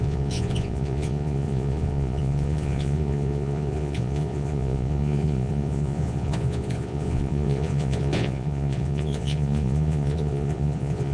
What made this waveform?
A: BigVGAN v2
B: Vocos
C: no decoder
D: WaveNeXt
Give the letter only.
B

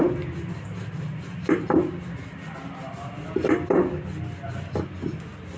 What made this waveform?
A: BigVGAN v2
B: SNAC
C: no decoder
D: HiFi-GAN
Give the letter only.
C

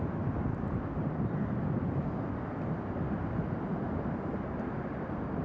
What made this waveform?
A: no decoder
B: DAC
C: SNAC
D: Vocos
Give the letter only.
A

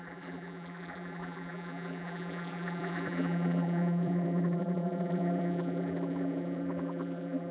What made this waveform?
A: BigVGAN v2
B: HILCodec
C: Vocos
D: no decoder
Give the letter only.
A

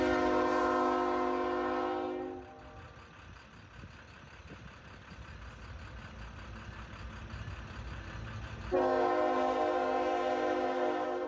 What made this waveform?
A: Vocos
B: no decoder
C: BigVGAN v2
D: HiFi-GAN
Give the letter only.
B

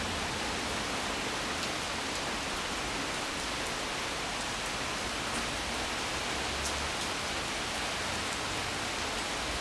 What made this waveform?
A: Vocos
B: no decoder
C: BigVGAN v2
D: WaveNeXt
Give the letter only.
B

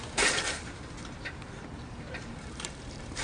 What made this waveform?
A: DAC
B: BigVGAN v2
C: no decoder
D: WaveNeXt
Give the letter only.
B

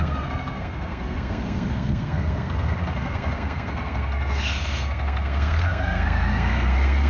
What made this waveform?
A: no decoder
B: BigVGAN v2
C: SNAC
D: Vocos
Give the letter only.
C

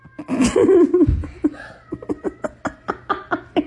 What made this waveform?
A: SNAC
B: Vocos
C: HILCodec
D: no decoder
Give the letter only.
D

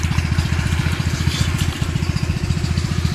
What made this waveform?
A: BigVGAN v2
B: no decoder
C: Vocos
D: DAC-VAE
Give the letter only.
B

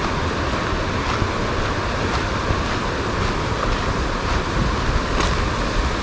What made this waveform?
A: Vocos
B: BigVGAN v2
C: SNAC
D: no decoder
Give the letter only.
D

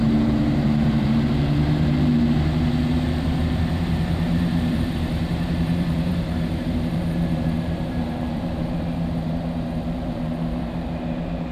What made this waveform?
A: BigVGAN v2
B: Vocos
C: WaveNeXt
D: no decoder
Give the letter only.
A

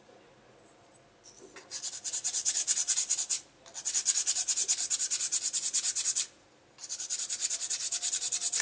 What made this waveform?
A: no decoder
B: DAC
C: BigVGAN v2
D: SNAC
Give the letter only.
A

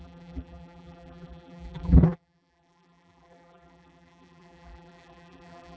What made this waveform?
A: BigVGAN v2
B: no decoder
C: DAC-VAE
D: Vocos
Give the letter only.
A